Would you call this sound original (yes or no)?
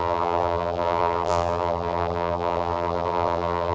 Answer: no